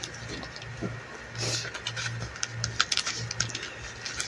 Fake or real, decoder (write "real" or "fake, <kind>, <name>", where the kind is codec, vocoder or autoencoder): real